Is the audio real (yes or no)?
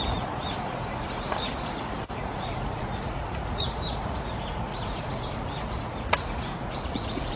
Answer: no